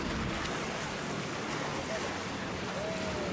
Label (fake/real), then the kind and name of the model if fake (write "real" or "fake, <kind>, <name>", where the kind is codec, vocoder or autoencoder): real